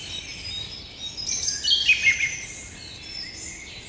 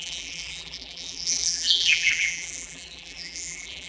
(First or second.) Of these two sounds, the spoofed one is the second